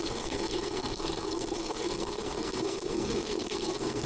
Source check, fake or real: fake